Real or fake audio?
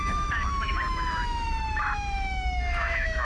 fake